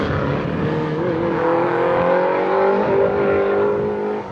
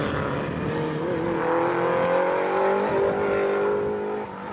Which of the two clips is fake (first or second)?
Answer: first